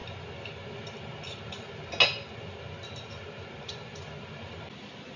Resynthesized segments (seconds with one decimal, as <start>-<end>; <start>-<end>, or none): none